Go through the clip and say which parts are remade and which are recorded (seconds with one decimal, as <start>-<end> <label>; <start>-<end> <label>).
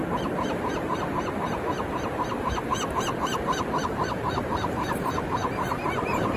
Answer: 0.0-3.8 recorded; 3.8-6.4 remade